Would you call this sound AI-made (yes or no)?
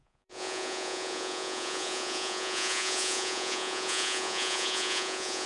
yes